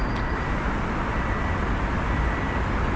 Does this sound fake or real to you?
real